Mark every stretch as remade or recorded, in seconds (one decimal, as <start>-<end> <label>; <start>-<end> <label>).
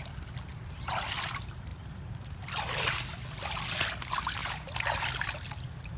0.0-1.7 recorded; 1.7-2.4 remade; 2.4-6.0 recorded